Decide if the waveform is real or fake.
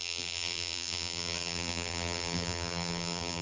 fake